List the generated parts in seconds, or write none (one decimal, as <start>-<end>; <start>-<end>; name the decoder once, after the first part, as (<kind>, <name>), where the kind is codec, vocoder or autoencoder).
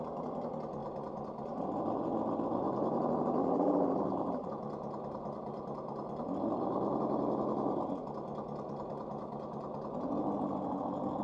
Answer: 3.4-4.5 (vocoder, BigVGAN v2)